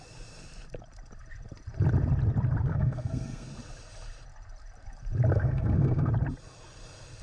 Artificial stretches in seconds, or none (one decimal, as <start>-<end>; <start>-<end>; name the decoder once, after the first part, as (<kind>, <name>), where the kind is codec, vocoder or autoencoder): 2.7-3.5 (codec, SNAC); 5.3-6.1